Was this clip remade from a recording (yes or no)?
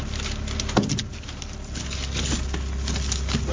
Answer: no